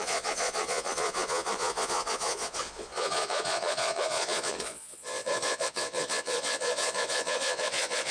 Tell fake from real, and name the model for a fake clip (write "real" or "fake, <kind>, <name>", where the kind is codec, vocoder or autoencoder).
fake, vocoder, Vocos